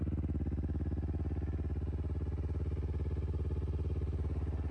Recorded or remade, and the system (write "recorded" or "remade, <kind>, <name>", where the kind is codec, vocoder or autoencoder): recorded